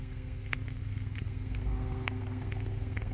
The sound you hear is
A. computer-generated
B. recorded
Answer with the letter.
A